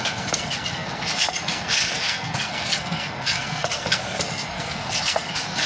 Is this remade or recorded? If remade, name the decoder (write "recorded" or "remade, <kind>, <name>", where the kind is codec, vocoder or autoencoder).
remade, codec, SNAC